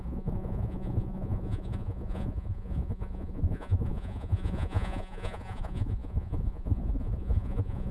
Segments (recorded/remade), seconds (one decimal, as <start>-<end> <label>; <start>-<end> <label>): 0.0-7.9 remade